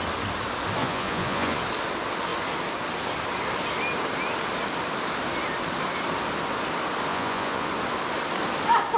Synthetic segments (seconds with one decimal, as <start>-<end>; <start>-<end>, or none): 0.8-1.6; 7.1-7.7